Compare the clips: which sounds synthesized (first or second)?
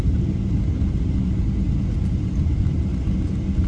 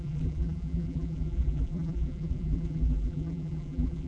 second